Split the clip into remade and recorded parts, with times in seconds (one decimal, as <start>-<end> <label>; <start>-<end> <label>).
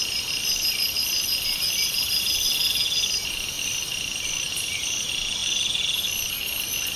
0.0-7.0 recorded